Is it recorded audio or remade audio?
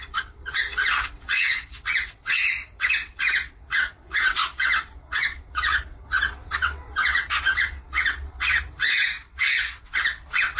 remade